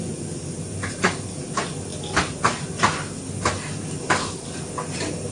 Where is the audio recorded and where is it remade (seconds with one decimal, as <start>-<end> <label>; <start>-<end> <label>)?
0.0-5.3 recorded